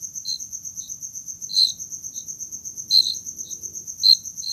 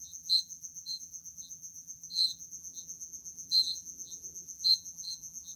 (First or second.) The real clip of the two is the first